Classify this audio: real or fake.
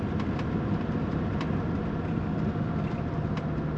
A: real